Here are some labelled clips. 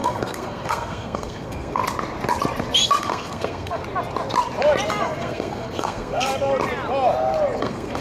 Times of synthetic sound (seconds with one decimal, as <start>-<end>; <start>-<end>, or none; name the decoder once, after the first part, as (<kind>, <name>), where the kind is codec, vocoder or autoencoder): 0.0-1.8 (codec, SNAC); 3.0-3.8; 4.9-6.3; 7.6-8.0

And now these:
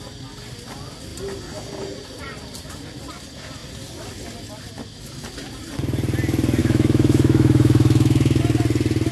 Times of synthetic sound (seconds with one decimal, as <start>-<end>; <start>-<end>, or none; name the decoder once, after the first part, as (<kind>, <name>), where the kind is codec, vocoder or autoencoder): 6.6-8.4 (autoencoder, DAC-VAE)

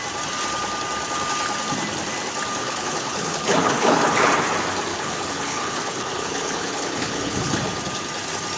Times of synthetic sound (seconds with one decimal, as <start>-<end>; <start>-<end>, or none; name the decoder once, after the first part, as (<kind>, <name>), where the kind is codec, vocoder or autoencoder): 2.6-4.3 (codec, HILCodec); 4.9-7.6

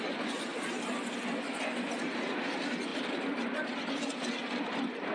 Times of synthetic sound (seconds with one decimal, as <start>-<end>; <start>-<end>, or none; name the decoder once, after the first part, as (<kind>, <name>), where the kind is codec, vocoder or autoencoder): 0.5-1.1 (vocoder, BigVGAN v2); 2.9-3.7

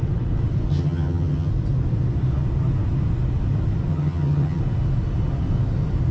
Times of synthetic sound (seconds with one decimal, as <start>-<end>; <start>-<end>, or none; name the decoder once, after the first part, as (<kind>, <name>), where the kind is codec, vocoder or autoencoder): 0.7-1.5 (vocoder, HiFi-GAN); 3.9-4.6

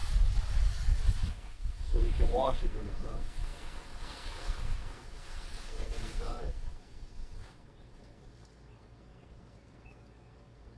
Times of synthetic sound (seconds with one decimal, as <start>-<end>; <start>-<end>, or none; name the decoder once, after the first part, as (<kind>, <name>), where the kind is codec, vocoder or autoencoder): 1.3-10.8 (codec, SNAC)

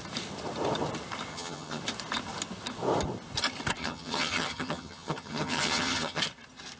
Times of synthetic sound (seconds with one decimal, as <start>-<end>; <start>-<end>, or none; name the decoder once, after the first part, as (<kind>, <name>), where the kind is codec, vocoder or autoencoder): 1.3-1.8 (vocoder, HiFi-GAN); 3.8-6.2

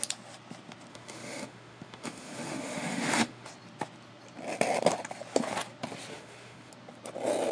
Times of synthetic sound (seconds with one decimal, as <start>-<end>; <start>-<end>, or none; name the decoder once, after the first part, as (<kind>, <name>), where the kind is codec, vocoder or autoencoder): 0.9-3.5 (autoencoder, DAC-VAE); 6.1-6.7